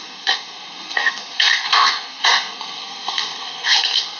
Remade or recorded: remade